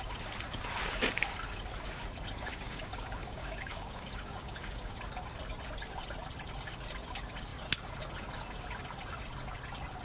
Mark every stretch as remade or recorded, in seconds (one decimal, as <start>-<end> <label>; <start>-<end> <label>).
0.0-2.5 recorded; 2.5-5.0 remade; 5.0-10.0 recorded